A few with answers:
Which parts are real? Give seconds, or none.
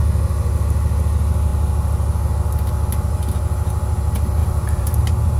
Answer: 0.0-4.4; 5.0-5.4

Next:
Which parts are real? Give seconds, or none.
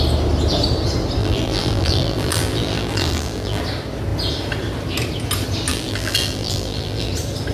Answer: 0.0-1.2; 3.6-5.7; 7.1-7.5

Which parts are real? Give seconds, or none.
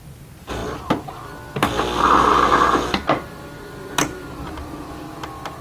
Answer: 0.0-5.6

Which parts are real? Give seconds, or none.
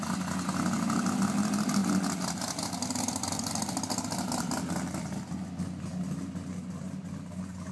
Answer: 0.0-1.8; 5.3-7.7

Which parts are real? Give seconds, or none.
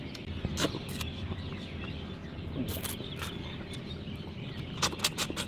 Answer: 0.0-5.5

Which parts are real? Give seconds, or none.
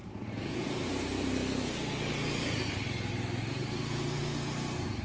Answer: none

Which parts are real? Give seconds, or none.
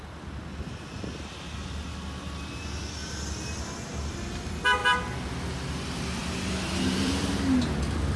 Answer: 0.0-6.2; 7.3-8.2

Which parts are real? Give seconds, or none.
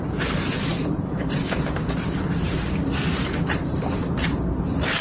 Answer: 0.0-0.7; 2.2-5.0